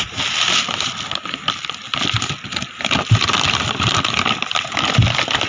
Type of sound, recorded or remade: recorded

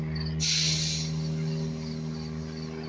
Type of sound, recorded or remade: recorded